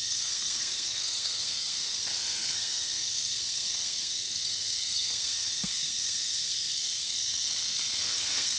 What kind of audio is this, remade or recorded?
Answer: remade